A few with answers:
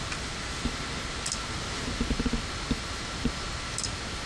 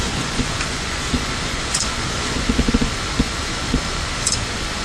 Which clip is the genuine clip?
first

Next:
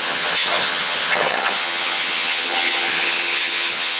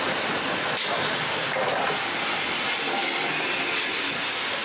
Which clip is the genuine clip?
second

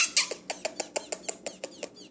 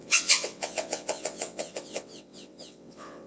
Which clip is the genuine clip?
first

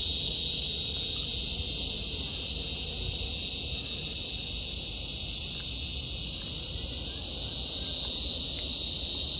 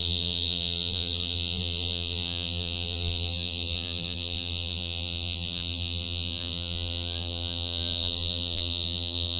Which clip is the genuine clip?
first